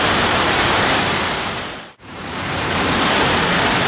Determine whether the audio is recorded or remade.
remade